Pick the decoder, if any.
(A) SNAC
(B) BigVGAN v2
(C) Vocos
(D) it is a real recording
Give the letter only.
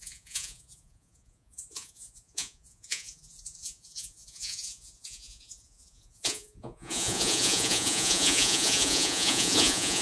C